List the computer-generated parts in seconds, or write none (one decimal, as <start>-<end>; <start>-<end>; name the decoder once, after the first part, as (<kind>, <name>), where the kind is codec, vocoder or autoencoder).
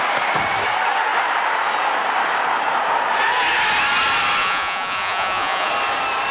4.4-5.7 (vocoder, Vocos)